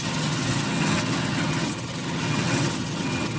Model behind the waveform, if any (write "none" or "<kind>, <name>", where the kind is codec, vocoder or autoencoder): vocoder, HiFi-GAN